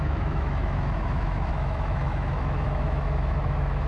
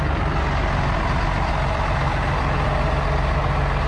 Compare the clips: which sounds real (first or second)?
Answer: second